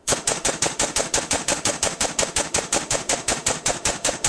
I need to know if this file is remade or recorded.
remade